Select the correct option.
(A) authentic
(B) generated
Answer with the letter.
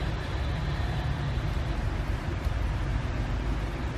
B